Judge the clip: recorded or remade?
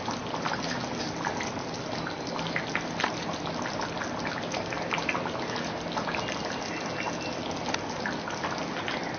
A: recorded